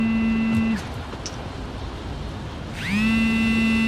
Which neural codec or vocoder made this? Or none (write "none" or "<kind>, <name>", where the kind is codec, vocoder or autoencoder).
none